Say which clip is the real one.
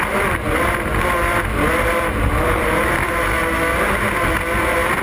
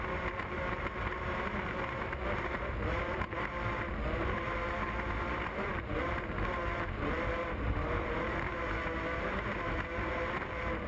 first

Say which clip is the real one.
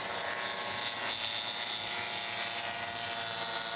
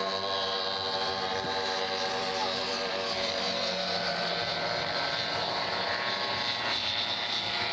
first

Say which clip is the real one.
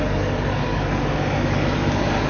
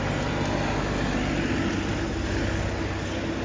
second